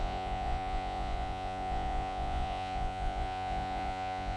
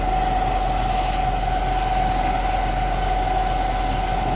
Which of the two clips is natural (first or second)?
second